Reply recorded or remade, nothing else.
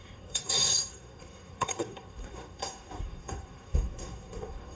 remade